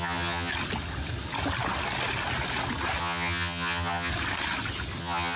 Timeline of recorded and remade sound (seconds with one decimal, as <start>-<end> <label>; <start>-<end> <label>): 0.0-0.5 remade; 0.5-3.0 recorded; 3.0-4.1 remade; 4.1-5.0 recorded; 5.0-5.4 remade